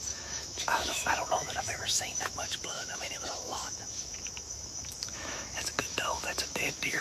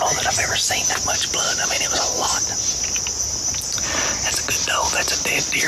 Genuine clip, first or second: second